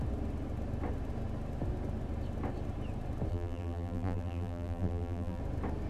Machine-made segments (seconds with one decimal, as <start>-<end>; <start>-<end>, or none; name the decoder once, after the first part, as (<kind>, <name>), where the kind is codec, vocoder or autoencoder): 3.3-5.4 (vocoder, BigVGAN v2)